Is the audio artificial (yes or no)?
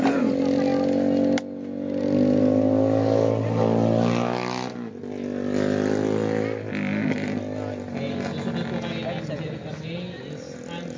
no